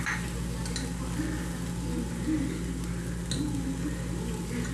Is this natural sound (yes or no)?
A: yes